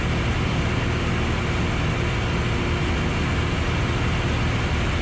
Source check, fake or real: real